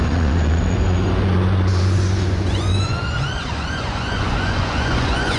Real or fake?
fake